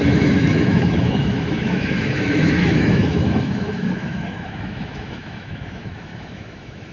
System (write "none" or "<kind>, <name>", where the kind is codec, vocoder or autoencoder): autoencoder, DAC-VAE